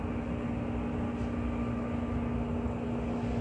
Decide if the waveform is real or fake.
real